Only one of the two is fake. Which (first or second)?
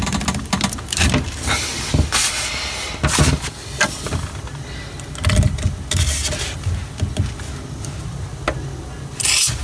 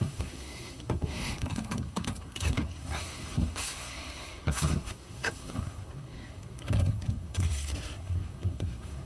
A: second